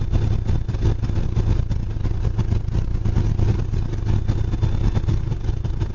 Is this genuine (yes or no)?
yes